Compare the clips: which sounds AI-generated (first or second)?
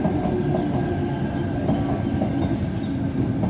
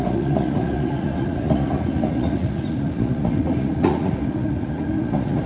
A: second